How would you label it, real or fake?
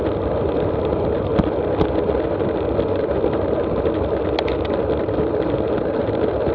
real